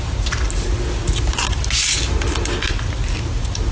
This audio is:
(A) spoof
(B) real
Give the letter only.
B